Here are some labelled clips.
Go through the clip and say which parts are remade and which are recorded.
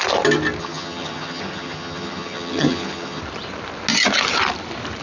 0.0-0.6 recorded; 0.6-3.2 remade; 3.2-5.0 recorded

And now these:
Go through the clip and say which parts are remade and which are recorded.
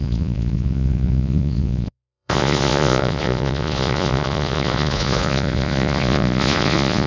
0.0-7.1 remade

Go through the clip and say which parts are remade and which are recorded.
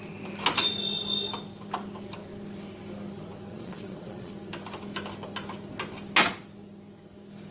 0.0-3.5 recorded; 3.5-4.3 remade; 4.3-7.5 recorded